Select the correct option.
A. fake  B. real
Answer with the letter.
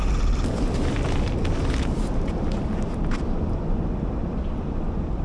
B